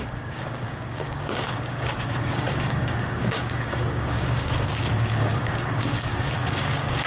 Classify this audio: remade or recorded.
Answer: remade